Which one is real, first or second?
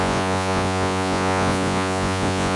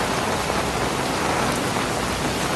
second